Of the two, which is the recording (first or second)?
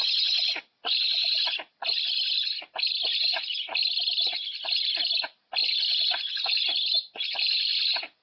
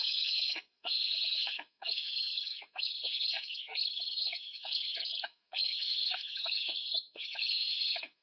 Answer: first